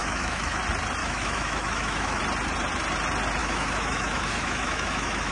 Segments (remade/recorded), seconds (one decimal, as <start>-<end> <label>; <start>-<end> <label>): 0.0-0.6 remade; 0.6-1.0 recorded; 1.0-2.2 remade; 2.2-3.4 recorded; 3.4-5.3 remade